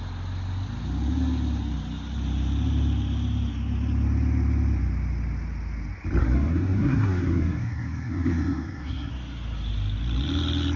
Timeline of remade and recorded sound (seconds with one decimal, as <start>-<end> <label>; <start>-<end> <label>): 0.0-6.2 recorded; 6.2-9.1 remade; 9.1-10.8 recorded